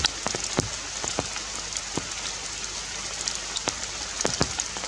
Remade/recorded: recorded